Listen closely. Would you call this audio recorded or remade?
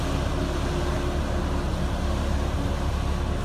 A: recorded